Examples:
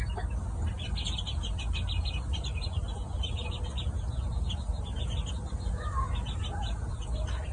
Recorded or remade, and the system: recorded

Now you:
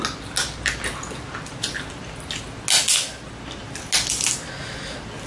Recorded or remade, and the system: recorded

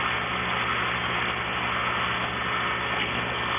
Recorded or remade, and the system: recorded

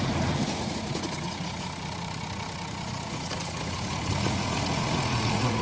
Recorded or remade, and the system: remade, vocoder, Vocos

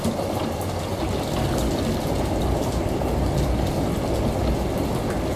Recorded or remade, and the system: recorded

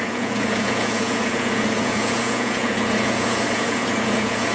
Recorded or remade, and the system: remade, vocoder, Vocos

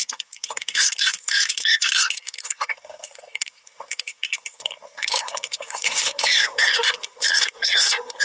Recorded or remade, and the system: remade, codec, SNAC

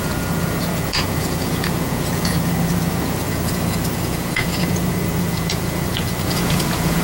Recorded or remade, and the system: remade, vocoder, Vocos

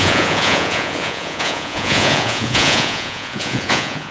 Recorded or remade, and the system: remade, vocoder, Vocos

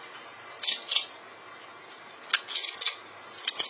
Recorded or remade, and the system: recorded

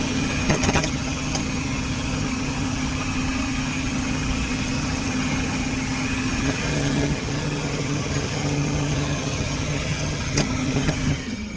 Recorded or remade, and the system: remade, vocoder, HiFi-GAN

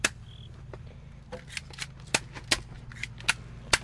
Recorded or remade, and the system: recorded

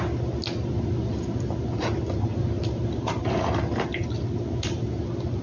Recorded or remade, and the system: recorded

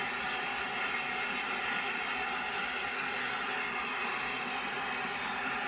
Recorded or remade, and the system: recorded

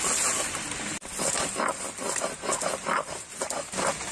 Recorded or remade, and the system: recorded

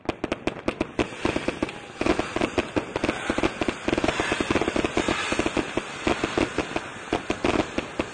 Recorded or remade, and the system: recorded